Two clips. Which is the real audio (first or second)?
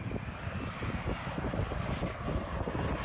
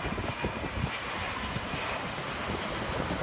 first